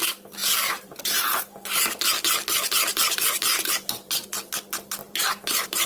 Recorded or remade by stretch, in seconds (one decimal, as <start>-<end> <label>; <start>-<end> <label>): 0.0-0.4 recorded; 0.4-2.1 remade; 2.1-3.5 recorded; 3.5-4.5 remade; 4.5-5.0 recorded; 5.0-5.9 remade

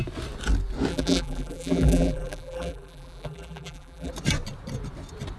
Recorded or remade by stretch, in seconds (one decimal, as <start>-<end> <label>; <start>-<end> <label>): 0.0-0.9 recorded; 0.9-4.1 remade; 4.1-5.4 recorded